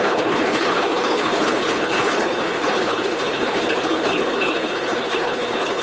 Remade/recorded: remade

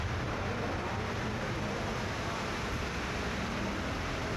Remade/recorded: remade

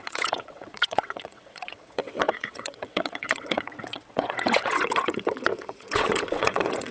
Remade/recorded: remade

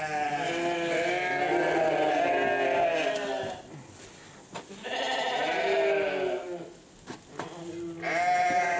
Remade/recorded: recorded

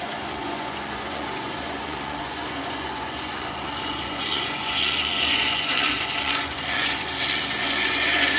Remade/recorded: remade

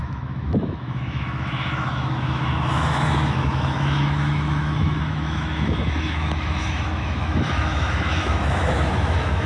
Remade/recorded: remade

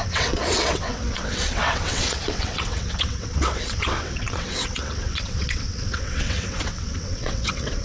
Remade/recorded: remade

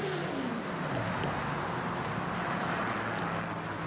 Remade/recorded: recorded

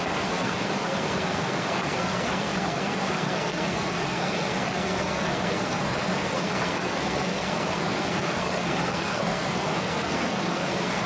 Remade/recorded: remade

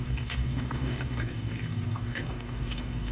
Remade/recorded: remade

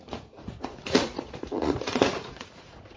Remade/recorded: remade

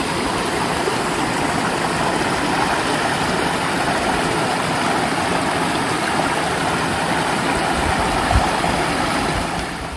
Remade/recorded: recorded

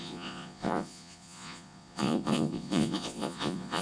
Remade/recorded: remade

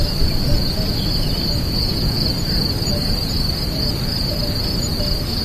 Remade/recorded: recorded